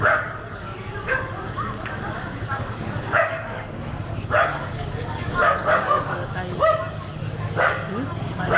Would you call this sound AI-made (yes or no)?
yes